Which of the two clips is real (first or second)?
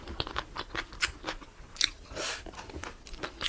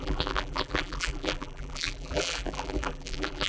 first